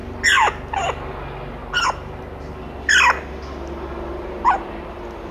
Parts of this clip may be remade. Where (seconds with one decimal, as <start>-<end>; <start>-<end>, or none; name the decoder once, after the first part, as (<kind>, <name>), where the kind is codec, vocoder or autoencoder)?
none